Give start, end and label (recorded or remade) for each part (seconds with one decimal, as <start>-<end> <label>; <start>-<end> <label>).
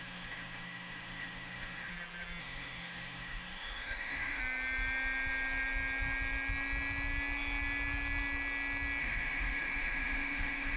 0.0-1.9 remade; 1.9-2.4 recorded; 2.4-4.4 remade; 4.4-9.0 recorded; 9.0-10.8 remade